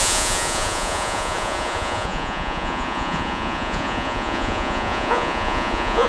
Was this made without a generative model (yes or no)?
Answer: no